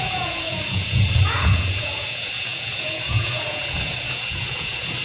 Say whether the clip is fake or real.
fake